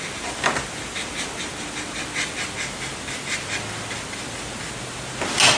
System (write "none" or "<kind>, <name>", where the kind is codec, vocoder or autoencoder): none